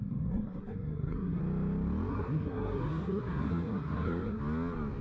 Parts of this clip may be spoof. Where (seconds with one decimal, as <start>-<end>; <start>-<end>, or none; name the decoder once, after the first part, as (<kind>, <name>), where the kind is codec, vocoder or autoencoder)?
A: 0.0-1.4 (codec, SNAC); 2.1-4.4